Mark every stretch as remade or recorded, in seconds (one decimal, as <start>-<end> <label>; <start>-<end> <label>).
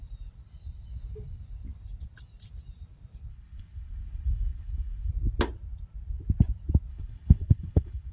0.0-3.3 recorded; 3.3-5.1 remade; 5.1-6.9 recorded; 6.9-8.1 remade